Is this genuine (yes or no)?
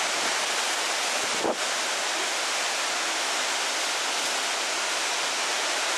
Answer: yes